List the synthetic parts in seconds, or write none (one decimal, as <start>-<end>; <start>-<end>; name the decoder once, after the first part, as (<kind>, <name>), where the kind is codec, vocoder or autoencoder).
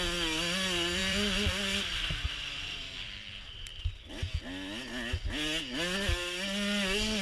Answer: 1.0-4.1 (vocoder, BigVGAN v2)